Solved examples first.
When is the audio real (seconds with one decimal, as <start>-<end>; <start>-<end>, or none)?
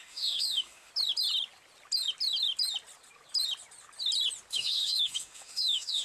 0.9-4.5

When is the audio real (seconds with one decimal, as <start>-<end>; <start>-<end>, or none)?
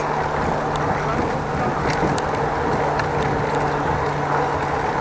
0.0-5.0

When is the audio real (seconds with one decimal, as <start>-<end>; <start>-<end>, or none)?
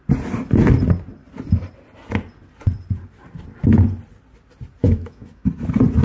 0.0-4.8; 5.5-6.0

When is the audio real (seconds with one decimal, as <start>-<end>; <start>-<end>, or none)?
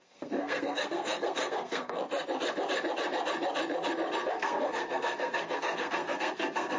2.0-4.3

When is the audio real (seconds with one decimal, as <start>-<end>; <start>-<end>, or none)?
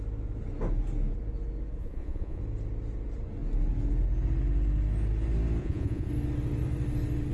0.0-1.8; 2.4-5.6; 6.1-7.3